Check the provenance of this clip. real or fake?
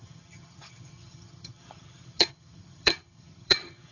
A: fake